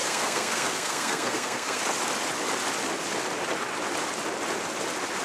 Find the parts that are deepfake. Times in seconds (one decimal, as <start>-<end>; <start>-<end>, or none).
0.0-1.8